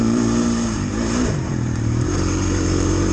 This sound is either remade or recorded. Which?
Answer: remade